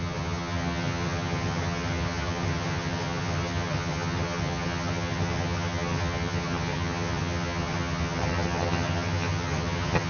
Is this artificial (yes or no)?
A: yes